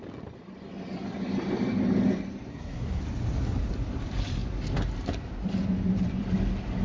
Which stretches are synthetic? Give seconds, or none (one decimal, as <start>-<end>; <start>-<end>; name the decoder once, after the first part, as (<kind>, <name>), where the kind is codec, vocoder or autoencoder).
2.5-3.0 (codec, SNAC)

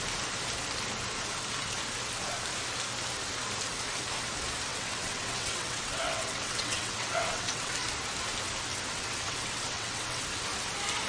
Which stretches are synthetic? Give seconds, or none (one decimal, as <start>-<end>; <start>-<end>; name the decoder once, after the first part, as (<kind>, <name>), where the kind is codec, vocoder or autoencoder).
4.7-7.7 (vocoder, WaveNeXt); 8.9-10.2

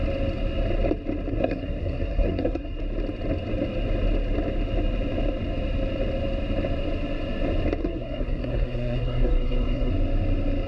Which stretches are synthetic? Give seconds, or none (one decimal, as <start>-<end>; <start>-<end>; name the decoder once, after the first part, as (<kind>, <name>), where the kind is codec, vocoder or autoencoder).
1.3-2.8 (codec, SNAC); 7.8-9.9